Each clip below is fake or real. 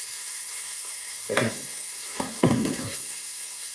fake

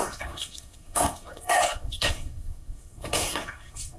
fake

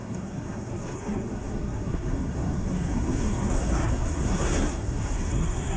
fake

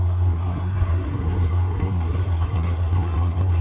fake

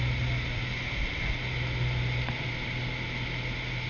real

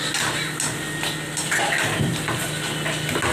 real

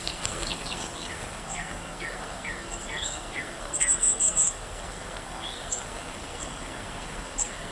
fake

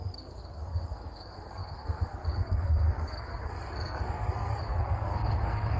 fake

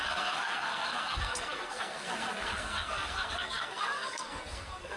fake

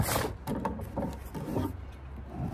real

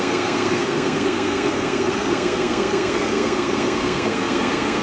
fake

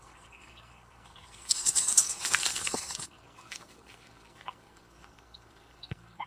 fake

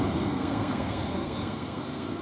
fake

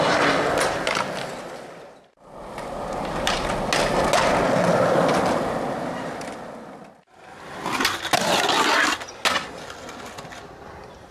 real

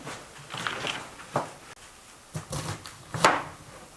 real